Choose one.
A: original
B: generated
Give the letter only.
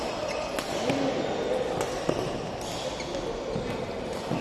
A